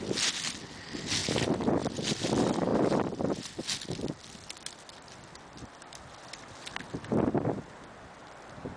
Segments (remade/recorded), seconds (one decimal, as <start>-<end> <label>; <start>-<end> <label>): 0.0-8.8 recorded